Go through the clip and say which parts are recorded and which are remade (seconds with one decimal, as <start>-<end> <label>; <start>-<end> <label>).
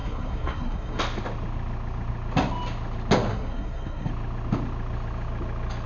0.0-1.0 remade; 1.0-3.3 recorded; 3.3-4.1 remade; 4.1-5.9 recorded